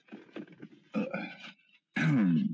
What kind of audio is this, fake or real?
real